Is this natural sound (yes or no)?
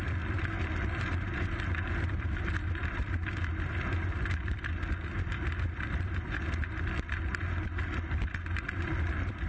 no